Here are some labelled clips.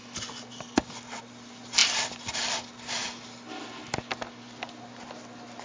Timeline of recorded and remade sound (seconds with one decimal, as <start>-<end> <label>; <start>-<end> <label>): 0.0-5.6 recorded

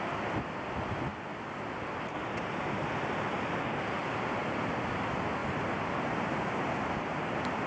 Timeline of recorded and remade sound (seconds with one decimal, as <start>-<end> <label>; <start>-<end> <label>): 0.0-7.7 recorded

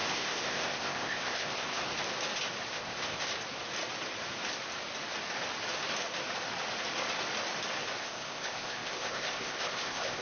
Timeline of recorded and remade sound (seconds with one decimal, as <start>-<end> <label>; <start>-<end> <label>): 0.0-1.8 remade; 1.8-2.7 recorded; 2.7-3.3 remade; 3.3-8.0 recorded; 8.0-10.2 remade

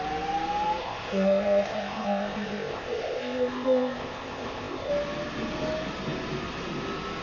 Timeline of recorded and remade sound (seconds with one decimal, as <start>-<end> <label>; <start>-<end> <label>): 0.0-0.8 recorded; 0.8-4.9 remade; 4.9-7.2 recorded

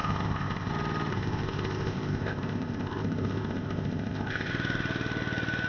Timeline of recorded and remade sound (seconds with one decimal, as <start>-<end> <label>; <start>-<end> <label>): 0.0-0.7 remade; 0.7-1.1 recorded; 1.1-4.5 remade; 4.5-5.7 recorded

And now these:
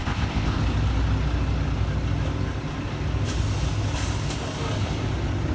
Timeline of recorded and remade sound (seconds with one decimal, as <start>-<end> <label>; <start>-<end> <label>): 0.0-0.6 remade; 0.6-5.5 recorded